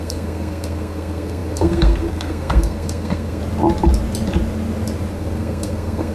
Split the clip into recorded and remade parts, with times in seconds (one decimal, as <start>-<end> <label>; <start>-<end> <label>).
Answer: 0.0-3.4 remade; 3.4-5.1 recorded; 5.1-6.1 remade